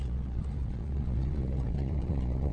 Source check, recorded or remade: remade